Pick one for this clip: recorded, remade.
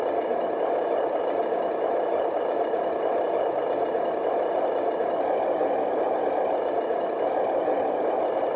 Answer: recorded